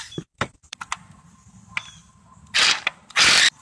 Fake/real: fake